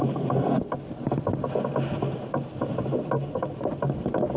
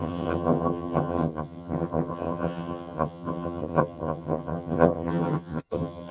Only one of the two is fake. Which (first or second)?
second